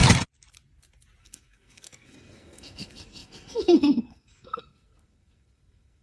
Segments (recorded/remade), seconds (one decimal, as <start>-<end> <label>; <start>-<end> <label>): 0.0-1.2 recorded; 1.2-6.0 remade